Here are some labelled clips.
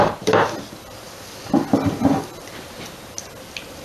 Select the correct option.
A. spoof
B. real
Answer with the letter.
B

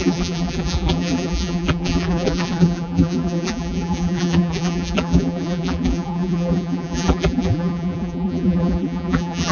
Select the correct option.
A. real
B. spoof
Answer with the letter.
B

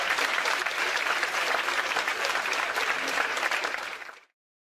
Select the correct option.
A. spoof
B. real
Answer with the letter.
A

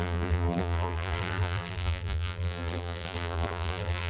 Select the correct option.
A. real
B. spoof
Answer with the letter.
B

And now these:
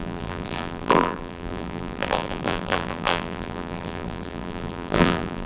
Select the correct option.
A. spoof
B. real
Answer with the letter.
A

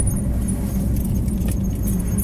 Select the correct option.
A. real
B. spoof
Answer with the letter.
B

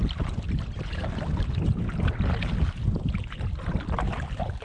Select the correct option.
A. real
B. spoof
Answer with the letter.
A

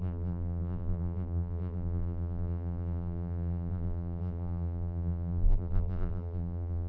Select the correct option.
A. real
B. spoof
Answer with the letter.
B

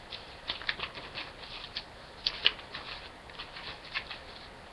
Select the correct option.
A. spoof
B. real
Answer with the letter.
B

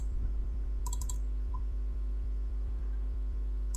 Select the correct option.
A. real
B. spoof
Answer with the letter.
B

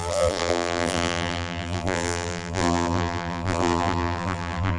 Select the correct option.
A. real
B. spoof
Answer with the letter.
B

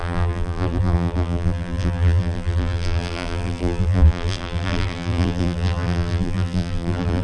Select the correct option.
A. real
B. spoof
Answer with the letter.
B